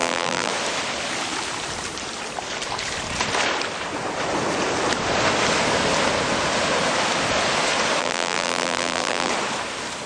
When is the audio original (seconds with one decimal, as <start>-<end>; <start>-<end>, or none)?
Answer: 0.5-8.0; 9.3-10.1